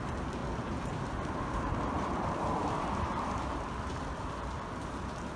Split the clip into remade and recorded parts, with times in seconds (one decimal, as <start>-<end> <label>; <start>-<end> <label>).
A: 0.0-5.4 remade